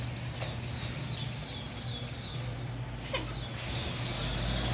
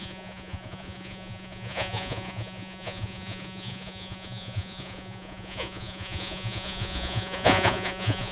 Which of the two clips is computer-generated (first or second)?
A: second